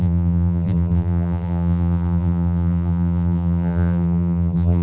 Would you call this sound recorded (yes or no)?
no